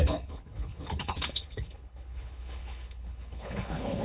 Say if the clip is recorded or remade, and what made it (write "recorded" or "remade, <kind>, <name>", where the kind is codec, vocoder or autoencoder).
remade, codec, HILCodec